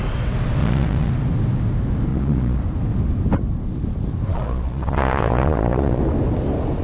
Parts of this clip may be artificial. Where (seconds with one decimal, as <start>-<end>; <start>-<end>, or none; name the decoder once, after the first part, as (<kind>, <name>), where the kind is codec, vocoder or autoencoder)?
0.6-1.1 (vocoder, Vocos); 2.1-2.6; 4.3-6.0